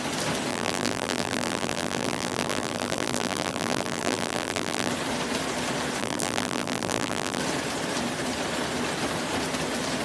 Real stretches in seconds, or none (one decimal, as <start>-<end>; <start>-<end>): 0.0-0.5; 4.9-6.0; 7.4-10.0